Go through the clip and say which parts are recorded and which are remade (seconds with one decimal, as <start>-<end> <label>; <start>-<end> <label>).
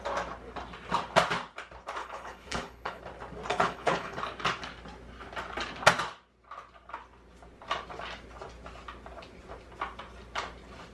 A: 0.0-2.0 recorded; 2.0-3.0 remade; 3.0-3.5 recorded; 3.5-4.2 remade; 4.2-10.9 recorded